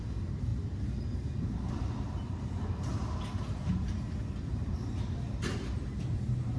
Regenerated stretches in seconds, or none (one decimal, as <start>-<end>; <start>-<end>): 0.0-6.6